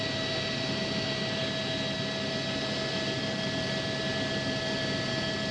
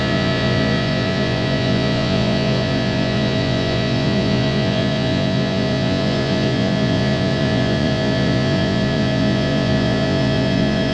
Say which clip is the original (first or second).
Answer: first